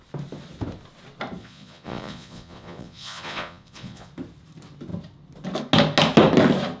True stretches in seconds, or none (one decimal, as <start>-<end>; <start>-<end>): 0.0-1.4; 4.1-6.8